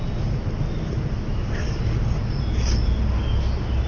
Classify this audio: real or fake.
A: real